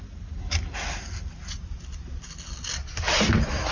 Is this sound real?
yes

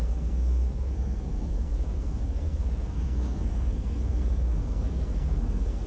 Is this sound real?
no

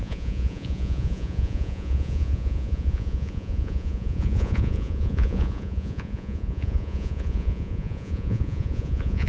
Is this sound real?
no